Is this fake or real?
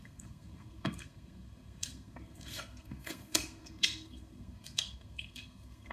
fake